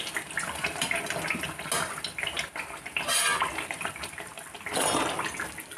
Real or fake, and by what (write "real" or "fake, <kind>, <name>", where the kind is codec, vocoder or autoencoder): real